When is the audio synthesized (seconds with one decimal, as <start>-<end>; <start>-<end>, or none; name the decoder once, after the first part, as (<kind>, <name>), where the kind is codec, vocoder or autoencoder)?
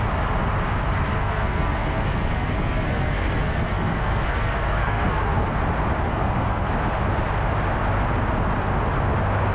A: 1.2-5.6 (codec, SNAC); 6.1-6.7